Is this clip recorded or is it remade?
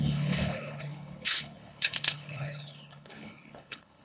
remade